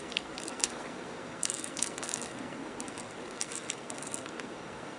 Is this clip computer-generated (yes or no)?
yes